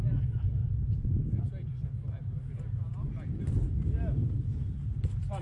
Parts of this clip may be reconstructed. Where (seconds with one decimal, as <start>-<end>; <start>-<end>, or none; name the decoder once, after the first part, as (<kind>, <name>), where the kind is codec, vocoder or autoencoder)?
none